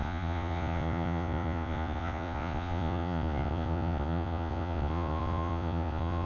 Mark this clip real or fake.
fake